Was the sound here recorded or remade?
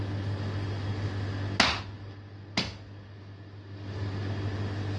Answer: recorded